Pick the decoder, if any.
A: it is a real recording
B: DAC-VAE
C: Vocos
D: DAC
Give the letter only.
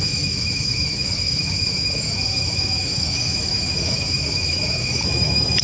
B